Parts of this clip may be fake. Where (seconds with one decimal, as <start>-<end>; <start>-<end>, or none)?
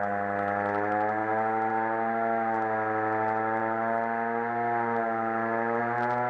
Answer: none